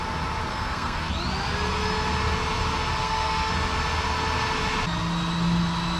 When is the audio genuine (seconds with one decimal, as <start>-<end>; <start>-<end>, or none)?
0.0-0.5; 1.1-3.0; 3.5-6.0